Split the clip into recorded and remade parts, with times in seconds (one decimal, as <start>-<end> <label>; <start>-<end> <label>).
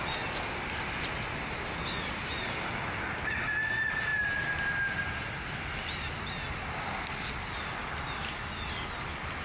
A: 0.0-9.4 recorded